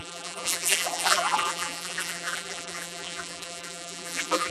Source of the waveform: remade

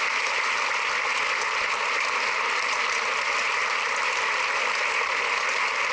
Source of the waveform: recorded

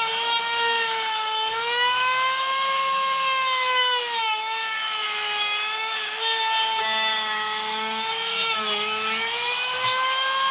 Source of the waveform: remade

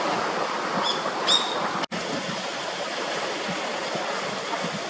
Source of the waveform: recorded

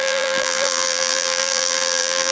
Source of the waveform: remade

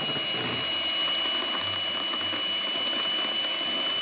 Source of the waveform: recorded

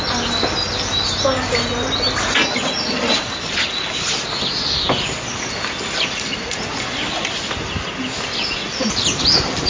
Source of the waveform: recorded